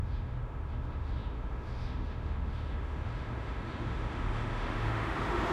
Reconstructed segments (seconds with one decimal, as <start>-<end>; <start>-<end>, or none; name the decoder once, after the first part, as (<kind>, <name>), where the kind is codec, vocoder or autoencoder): 0.0-5.5 (autoencoder, DAC-VAE)